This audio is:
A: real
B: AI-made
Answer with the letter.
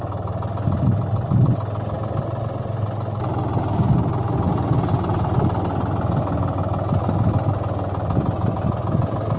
A